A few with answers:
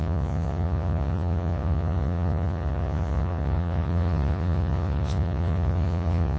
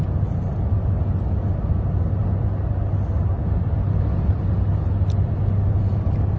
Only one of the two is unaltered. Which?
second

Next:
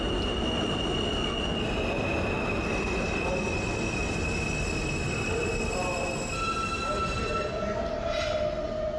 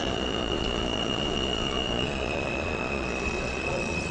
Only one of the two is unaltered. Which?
first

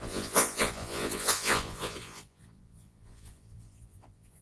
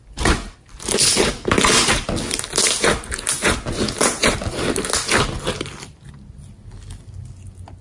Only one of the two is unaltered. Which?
second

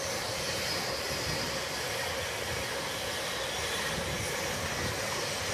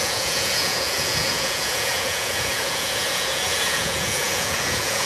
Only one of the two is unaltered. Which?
first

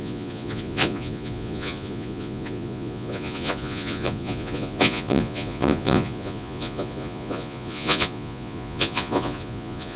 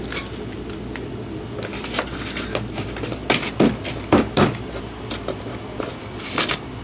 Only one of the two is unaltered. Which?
second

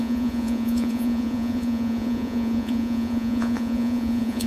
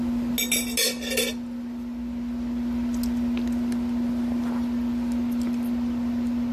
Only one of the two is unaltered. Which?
second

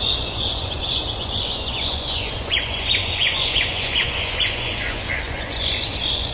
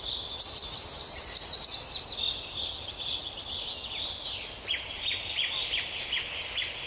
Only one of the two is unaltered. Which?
second